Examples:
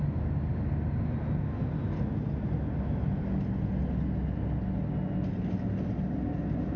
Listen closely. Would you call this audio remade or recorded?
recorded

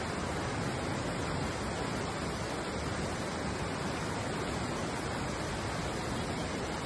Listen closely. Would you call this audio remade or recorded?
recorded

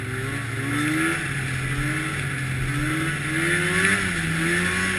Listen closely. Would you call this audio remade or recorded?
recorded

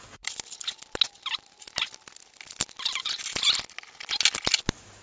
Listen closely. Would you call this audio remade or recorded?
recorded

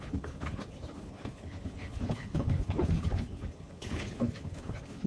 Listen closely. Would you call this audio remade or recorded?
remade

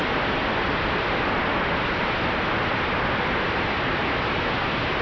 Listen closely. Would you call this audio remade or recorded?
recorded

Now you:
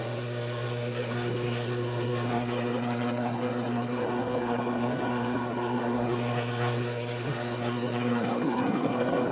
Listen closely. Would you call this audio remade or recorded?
remade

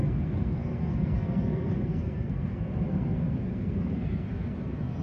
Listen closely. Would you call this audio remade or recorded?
remade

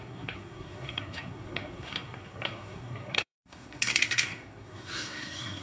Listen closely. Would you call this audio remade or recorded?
remade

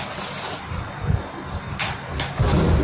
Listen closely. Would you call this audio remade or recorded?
recorded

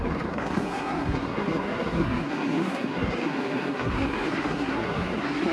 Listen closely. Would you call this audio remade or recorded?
remade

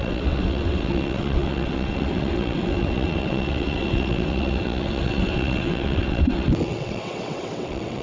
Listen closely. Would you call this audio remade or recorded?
remade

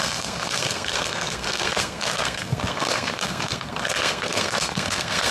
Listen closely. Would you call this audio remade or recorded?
remade